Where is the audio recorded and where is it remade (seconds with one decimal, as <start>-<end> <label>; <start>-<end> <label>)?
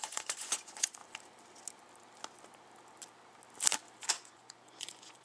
0.0-1.0 remade; 1.0-4.1 recorded; 4.1-5.2 remade